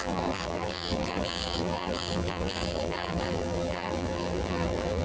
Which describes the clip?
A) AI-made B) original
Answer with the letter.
A